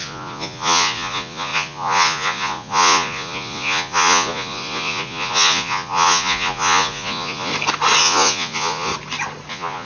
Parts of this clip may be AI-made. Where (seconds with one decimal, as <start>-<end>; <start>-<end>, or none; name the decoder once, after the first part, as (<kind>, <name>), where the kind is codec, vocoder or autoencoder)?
0.0-7.5 (vocoder, Vocos); 8.0-8.9; 9.5-9.9